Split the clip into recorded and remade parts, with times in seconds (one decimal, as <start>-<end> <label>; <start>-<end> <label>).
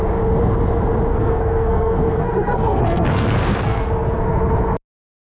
0.0-1.1 recorded; 1.1-4.2 remade; 4.2-5.2 recorded